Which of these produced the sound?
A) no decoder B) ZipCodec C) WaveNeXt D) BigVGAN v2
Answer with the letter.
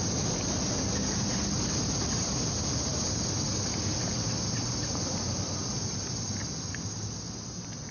A